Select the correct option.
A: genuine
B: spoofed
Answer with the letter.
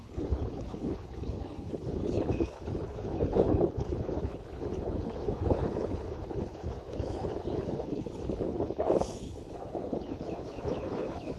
B